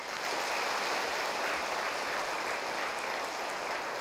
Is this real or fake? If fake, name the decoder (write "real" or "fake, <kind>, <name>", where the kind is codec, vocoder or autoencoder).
real